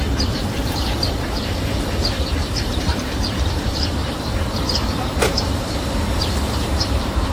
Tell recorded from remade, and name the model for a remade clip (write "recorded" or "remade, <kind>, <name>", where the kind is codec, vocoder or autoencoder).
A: remade, vocoder, BigVGAN v2